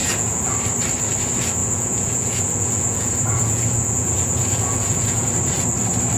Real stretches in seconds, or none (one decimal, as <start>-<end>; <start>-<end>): 0.5-1.6; 5.3-6.2